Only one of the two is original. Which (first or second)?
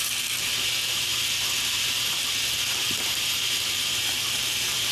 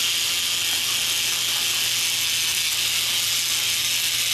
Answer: second